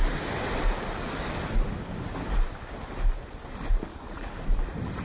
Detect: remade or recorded recorded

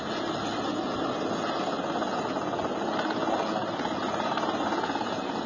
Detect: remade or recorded recorded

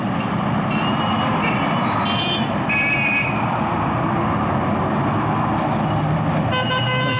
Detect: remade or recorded recorded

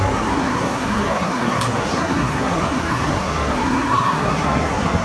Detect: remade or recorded remade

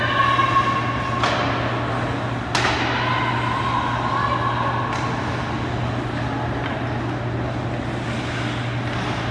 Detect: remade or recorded recorded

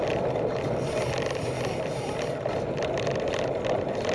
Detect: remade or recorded recorded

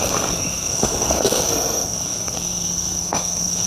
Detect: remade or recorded remade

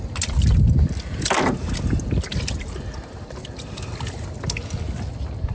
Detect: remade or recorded recorded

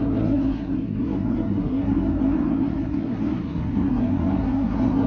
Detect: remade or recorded remade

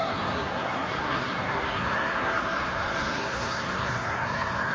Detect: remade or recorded remade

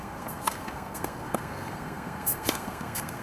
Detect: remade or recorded remade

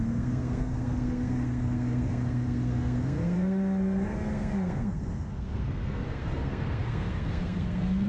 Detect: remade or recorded remade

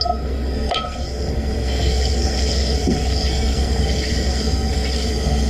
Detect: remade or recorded remade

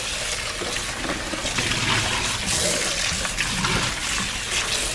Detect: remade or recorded recorded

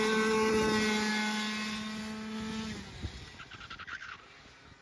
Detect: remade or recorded recorded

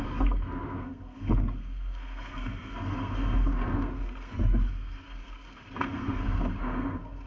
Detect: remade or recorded remade